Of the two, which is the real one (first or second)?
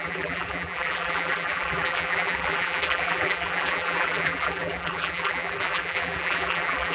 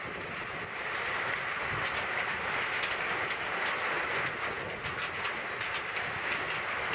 second